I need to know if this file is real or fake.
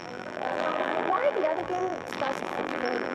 fake